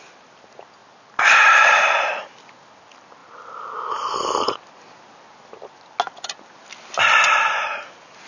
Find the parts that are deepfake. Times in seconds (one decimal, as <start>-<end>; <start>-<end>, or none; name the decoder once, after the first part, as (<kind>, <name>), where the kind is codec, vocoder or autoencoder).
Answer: none